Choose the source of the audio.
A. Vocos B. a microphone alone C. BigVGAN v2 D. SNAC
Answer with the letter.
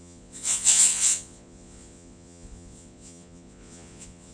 A